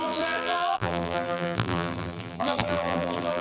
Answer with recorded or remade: remade